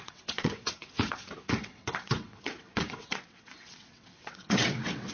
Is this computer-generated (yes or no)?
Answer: yes